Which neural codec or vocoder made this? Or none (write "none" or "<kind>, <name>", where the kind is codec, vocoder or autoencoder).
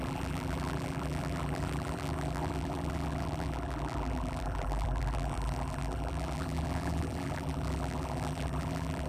vocoder, BigVGAN v2